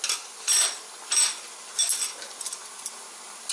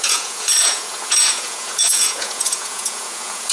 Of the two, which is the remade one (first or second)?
second